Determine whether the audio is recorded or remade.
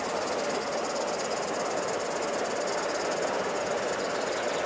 recorded